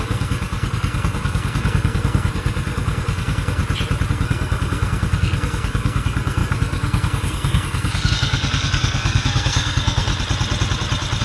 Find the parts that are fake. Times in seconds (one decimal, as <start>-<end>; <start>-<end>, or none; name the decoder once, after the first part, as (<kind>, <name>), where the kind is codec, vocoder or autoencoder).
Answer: 0.0-3.6 (codec, SNAC); 4.1-10.1